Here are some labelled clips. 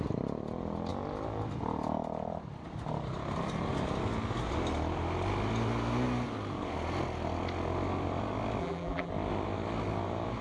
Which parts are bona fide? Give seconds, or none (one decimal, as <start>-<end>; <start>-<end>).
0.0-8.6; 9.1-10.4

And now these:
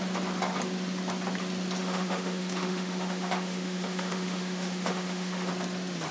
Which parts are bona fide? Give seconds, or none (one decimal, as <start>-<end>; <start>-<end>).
0.0-1.8; 5.5-6.1

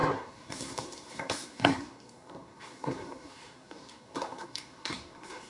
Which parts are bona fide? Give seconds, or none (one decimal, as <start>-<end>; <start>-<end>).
none

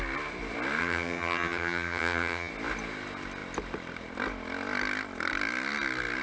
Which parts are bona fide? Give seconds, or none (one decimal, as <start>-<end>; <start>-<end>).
0.0-0.8; 2.5-6.2

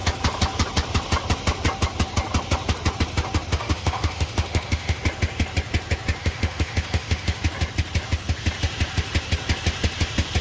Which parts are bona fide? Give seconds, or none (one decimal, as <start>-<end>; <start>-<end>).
0.0-3.5; 5.0-6.2; 7.4-10.4

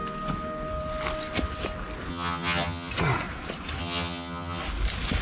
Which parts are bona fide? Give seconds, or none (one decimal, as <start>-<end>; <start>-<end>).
0.0-2.1; 2.9-3.8; 4.6-5.2